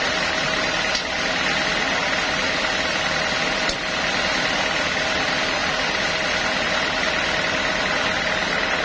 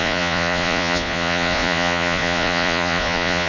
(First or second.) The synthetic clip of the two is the second